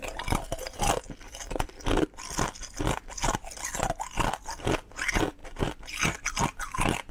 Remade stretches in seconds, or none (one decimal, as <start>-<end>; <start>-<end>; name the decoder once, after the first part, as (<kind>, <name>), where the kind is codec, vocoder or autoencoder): 0.0-3.6 (vocoder, BigVGAN v2); 5.4-7.1